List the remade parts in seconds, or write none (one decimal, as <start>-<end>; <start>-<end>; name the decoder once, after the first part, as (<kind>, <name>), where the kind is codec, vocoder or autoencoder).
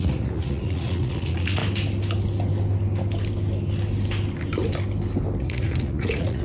0.0-1.6 (vocoder, Vocos); 5.4-6.4